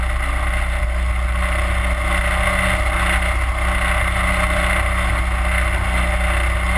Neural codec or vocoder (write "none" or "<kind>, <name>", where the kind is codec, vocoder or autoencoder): none